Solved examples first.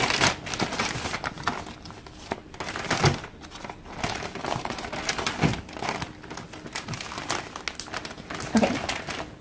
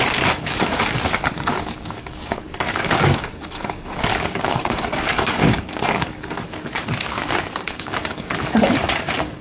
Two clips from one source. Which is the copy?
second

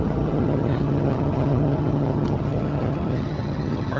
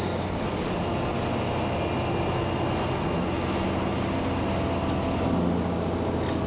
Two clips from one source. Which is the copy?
first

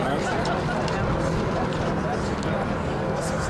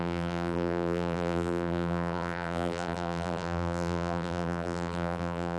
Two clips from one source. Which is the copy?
second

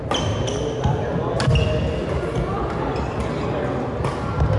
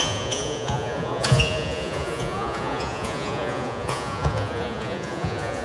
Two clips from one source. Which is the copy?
second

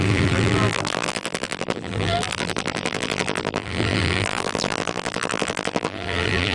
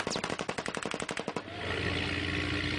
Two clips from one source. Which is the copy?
first